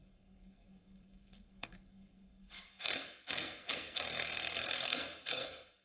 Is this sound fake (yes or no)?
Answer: yes